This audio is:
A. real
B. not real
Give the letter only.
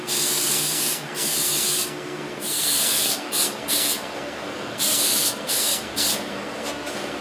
B